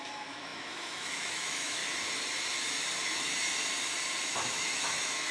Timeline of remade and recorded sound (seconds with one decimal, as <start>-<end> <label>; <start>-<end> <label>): 0.0-1.8 remade; 1.8-4.2 recorded; 4.2-5.3 remade